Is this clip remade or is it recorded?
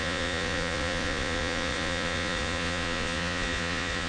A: remade